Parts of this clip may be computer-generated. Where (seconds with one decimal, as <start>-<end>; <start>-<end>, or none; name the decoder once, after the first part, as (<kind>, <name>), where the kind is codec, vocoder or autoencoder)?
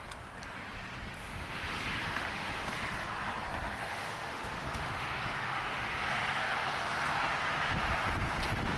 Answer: 1.2-2.7 (autoencoder, DAC-VAE); 3.8-6.0